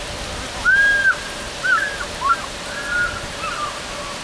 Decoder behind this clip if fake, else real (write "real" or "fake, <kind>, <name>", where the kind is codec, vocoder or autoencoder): real